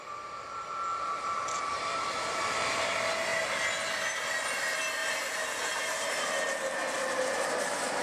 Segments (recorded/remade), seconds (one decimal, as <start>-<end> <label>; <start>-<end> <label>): 0.0-0.9 recorded; 0.9-2.9 remade; 2.9-5.0 recorded; 5.0-6.2 remade; 6.2-8.0 recorded